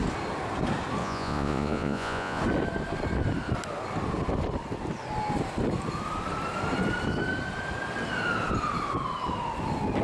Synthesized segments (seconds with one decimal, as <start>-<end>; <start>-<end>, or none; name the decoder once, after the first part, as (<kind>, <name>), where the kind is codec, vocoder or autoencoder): 1.0-2.4 (vocoder, Vocos)

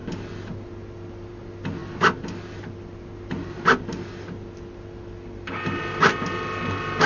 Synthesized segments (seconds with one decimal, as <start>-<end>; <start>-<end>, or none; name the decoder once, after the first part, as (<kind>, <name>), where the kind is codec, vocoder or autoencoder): none

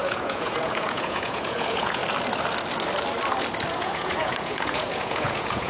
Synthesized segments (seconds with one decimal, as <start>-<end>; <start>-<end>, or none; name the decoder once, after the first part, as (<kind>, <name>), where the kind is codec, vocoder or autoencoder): 0.0-2.0 (vocoder, Vocos); 3.7-5.7

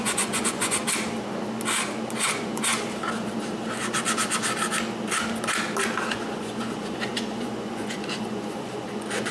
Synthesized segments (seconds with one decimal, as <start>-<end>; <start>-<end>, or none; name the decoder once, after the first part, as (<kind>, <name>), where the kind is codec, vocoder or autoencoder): 0.0-0.8 (vocoder, Vocos); 2.2-2.7; 6.1-9.3

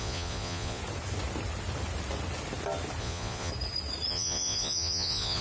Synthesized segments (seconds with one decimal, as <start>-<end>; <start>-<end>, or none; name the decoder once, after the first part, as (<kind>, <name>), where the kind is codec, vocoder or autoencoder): 0.0-0.8 (vocoder, Vocos); 3.0-3.5; 4.1-5.4